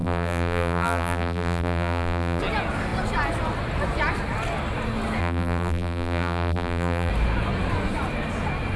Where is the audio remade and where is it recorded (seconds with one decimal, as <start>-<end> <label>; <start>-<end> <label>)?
0.0-2.4 remade; 2.4-5.2 recorded; 5.2-7.1 remade; 7.1-8.8 recorded